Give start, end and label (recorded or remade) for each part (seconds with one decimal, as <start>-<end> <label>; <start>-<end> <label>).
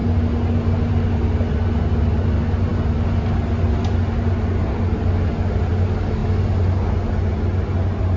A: 0.0-8.2 recorded